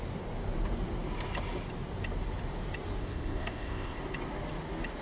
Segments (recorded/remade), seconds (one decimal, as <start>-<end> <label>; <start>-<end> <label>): 0.0-3.0 recorded; 3.0-4.0 remade; 4.0-5.0 recorded